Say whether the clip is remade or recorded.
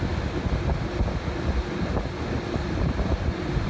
recorded